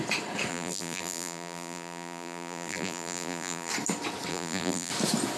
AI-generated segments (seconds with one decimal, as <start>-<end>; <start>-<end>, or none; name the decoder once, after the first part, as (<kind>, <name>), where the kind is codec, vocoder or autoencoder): 0.5-3.7 (vocoder, BigVGAN v2); 4.3-4.9

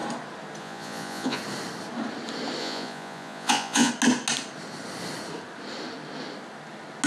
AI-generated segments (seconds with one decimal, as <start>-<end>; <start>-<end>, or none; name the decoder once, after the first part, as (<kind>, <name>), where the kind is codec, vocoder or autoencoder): 0.6-1.4 (vocoder, Vocos); 2.6-3.9

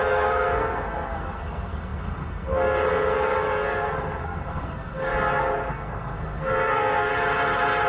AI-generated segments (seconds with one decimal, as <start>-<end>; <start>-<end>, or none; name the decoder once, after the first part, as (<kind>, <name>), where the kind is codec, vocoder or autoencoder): 0.0-5.1 (codec, SNAC); 5.7-7.1